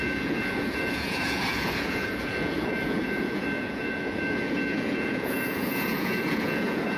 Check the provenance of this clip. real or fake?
fake